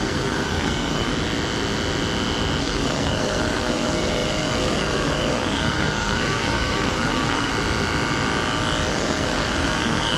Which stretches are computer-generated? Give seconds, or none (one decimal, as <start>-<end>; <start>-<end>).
0.0-1.1; 2.6-7.5; 8.9-10.2